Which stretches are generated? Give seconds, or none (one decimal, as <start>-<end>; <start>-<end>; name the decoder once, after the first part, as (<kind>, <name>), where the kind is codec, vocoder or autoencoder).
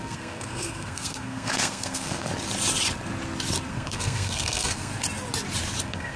0.0-2.3 (codec, SNAC); 3.7-4.9; 5.8-6.2